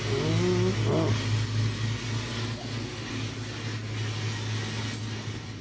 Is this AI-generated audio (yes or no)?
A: no